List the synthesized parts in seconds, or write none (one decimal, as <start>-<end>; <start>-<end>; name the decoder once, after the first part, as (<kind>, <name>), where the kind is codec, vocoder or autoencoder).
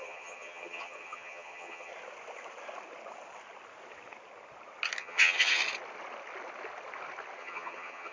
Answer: 0.0-1.9 (vocoder, HiFi-GAN); 5.0-5.6; 7.4-8.1